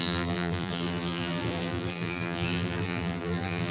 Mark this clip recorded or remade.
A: remade